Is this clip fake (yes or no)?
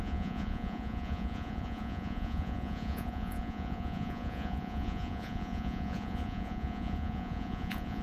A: yes